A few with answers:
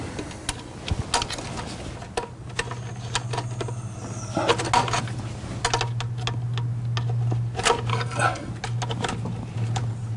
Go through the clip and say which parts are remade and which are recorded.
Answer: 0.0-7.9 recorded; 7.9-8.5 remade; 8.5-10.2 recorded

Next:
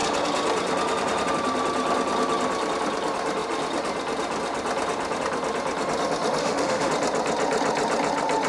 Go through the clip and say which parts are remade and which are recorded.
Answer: 0.0-6.4 recorded; 6.4-6.9 remade; 6.9-8.5 recorded

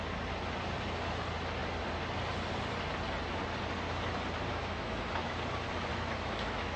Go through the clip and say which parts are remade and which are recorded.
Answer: 0.0-4.5 recorded; 4.5-5.3 remade; 5.3-5.9 recorded; 5.9-6.8 remade

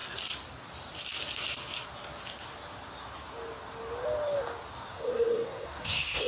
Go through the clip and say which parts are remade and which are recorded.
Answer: 0.0-4.9 recorded; 4.9-6.3 remade

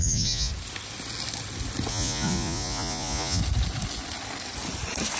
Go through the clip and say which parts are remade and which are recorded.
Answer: 0.0-0.5 remade; 0.5-1.9 recorded; 1.9-3.4 remade; 3.4-5.2 recorded

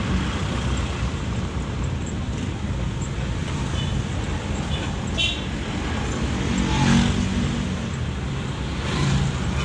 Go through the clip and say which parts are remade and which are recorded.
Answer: 0.0-9.6 recorded

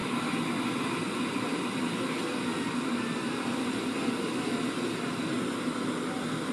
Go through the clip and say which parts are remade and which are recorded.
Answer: 0.0-6.5 recorded

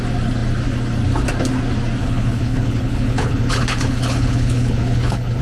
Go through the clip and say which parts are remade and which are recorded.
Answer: 0.0-2.0 recorded; 2.0-5.4 remade